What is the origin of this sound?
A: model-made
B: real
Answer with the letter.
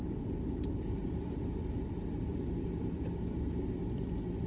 A